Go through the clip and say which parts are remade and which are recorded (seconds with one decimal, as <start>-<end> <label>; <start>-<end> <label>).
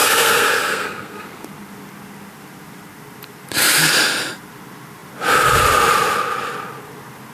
0.0-1.5 remade; 1.5-7.3 recorded